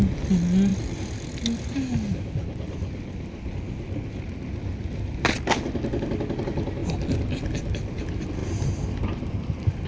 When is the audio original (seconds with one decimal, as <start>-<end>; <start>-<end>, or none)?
0.0-9.9